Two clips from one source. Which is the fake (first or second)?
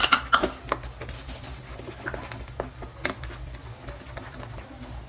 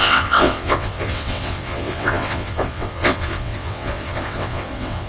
second